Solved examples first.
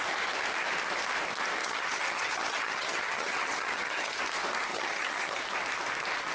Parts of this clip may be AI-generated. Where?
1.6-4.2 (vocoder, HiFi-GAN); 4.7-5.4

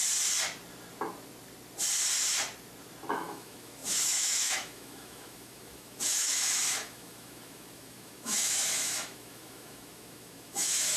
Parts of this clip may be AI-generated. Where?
3.1-11.0 (autoencoder, DAC-VAE)

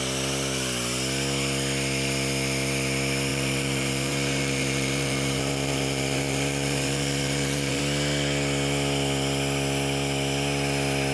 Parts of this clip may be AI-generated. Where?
3.3-7.8 (vocoder, BigVGAN v2)